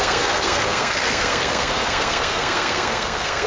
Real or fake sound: fake